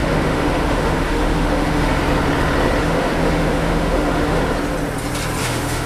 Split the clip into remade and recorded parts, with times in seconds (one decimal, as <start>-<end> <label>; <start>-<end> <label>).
0.0-2.0 remade; 2.0-2.8 recorded; 2.8-4.4 remade; 4.4-5.4 recorded; 5.4-5.9 remade